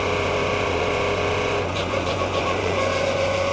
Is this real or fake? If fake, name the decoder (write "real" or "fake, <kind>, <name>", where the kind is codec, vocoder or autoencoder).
fake, vocoder, Vocos